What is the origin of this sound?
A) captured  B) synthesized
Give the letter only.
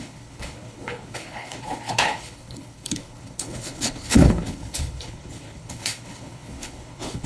B